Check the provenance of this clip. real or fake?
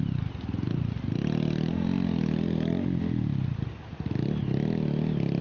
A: real